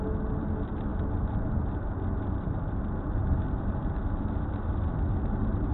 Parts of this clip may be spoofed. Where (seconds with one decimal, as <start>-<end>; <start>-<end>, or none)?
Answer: none